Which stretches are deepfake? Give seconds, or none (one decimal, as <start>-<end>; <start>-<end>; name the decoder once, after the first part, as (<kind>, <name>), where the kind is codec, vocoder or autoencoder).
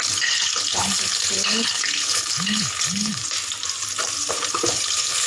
0.0-3.2 (codec, HILCodec); 4.3-5.3